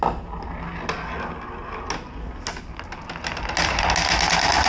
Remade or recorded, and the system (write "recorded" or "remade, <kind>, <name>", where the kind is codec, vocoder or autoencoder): recorded